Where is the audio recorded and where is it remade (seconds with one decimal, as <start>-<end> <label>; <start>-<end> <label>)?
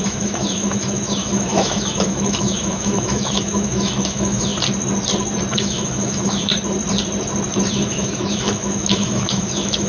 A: 0.0-4.5 remade; 4.5-5.5 recorded; 5.5-6.5 remade; 6.5-7.7 recorded; 7.7-9.9 remade